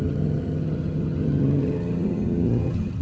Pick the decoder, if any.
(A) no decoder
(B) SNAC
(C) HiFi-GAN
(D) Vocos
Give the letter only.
C